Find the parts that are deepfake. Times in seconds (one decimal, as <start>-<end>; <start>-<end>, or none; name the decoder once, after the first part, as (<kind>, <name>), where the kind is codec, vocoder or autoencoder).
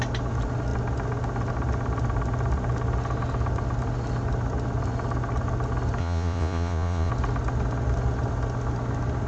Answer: 6.0-7.1 (vocoder, Vocos)